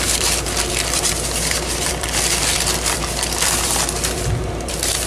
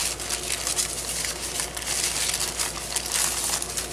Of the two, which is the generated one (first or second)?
first